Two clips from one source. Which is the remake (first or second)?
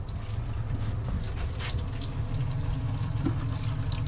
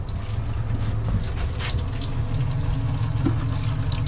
first